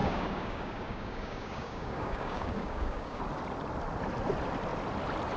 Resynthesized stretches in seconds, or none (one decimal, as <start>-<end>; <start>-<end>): 0.0-3.2